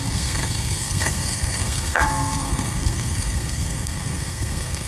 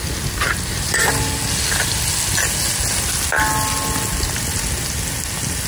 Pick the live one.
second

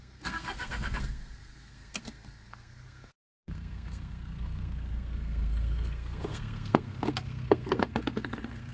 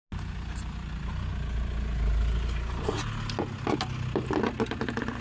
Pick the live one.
second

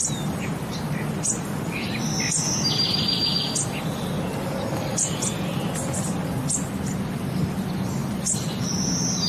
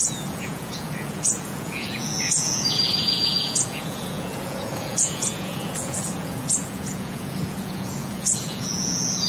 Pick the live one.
first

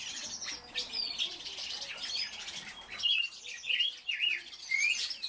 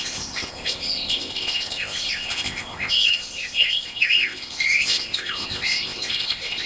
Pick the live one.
first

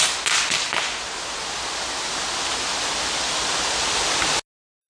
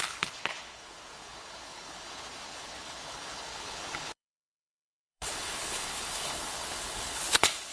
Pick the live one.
first